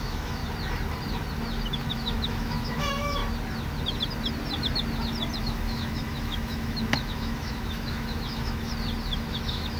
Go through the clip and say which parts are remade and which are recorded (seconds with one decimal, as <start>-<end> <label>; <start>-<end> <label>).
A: 0.0-0.4 remade; 0.4-1.7 recorded; 1.7-3.2 remade; 3.2-5.4 recorded; 5.4-8.7 remade; 8.7-9.3 recorded; 9.3-9.8 remade